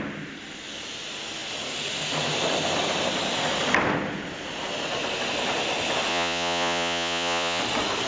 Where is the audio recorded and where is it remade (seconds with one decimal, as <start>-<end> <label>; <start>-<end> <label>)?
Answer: 0.0-6.1 recorded; 6.1-7.6 remade; 7.6-8.1 recorded